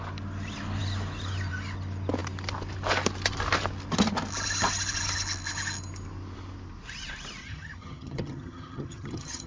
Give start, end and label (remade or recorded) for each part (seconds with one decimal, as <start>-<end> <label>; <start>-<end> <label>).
0.0-7.4 recorded; 7.4-9.5 remade